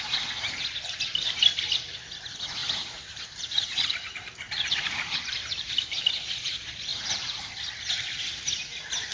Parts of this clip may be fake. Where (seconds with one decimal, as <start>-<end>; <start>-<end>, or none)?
2.6-5.7; 6.9-7.5